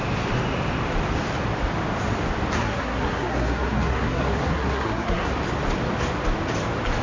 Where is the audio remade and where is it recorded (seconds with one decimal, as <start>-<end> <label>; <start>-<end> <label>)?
0.0-2.6 recorded; 2.6-5.3 remade; 5.3-7.0 recorded